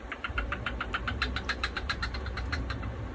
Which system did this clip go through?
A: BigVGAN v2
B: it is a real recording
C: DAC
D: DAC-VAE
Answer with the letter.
A